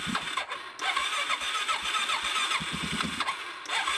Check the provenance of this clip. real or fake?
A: real